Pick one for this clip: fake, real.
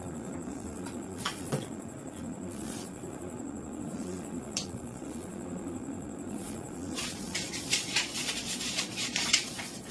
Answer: fake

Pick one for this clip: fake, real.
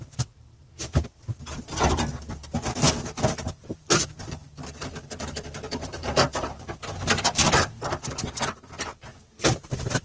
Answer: fake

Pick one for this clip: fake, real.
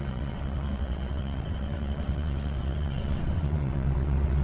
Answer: fake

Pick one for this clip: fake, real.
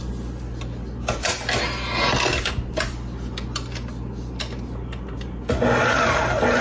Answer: real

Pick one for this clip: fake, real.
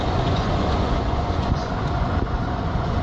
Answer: fake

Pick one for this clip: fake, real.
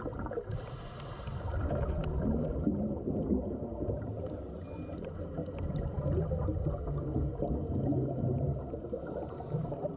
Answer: real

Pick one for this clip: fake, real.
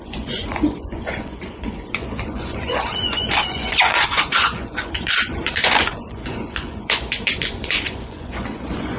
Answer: fake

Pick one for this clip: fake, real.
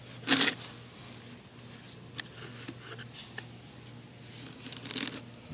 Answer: real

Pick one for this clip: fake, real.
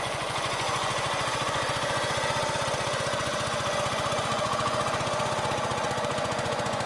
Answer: fake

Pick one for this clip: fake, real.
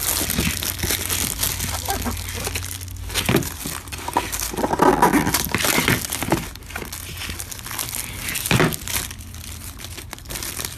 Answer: real